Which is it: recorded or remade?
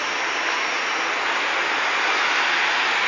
recorded